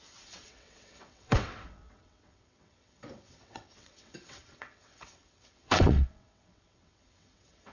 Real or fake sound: fake